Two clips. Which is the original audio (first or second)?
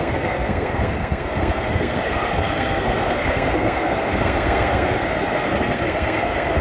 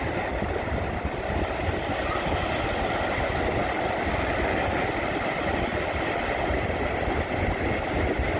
second